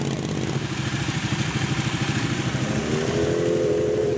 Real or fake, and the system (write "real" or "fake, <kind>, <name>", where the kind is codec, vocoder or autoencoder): real